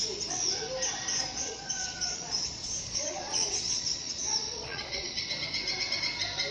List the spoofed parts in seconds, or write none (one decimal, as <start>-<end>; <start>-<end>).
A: 1.3-5.2